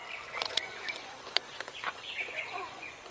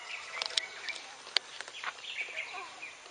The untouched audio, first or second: second